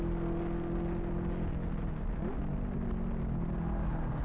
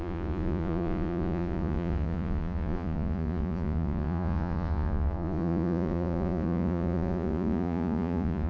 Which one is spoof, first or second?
second